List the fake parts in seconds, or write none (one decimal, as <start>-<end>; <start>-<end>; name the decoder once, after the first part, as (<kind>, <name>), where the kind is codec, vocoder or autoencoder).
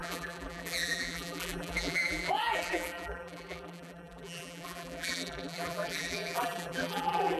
0.0-7.4 (vocoder, BigVGAN v2)